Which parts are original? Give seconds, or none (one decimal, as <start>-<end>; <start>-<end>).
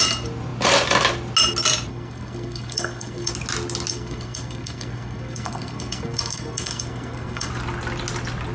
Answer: 0.0-1.9; 3.3-3.9; 7.5-8.5